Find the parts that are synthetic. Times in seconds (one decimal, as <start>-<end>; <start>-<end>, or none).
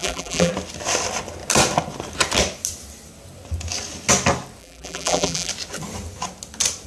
0.0-0.5; 4.6-5.5